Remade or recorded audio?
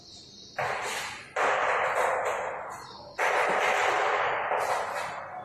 recorded